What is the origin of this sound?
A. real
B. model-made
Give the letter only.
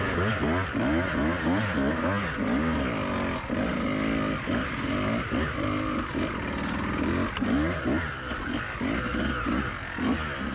A